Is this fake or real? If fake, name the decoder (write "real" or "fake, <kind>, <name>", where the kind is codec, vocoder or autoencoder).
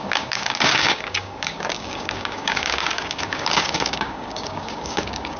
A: fake, codec, DAC